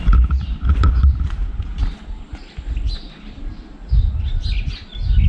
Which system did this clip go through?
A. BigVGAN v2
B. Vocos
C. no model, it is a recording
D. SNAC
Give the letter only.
C